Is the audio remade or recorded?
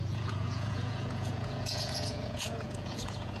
remade